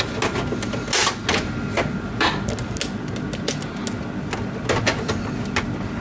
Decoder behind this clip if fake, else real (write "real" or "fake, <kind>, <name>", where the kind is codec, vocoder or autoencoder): real